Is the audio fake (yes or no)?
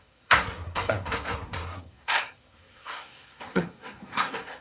yes